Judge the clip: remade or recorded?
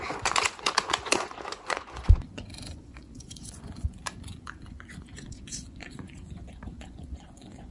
remade